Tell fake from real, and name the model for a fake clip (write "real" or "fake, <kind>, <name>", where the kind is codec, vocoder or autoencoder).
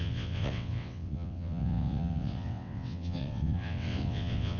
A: fake, vocoder, WaveNeXt